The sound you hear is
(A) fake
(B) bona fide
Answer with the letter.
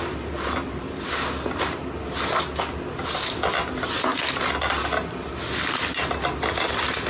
B